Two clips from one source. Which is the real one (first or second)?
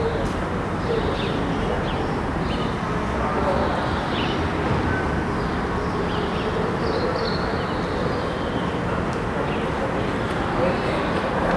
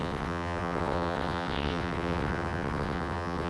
first